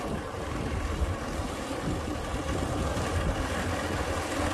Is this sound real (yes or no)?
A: yes